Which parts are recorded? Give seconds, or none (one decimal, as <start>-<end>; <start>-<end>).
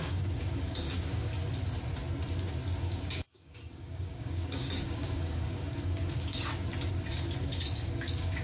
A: 1.3-2.8; 6.5-7.4